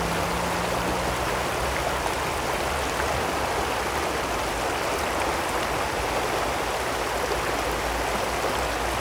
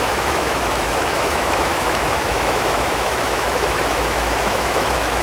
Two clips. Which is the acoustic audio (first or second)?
first